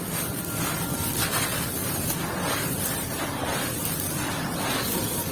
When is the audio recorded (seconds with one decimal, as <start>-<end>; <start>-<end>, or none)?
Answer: 0.0-1.8; 4.6-5.3